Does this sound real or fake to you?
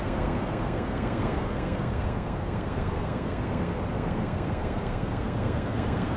fake